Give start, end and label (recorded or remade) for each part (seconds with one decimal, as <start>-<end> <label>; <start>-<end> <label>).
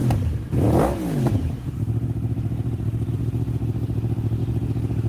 0.0-5.1 recorded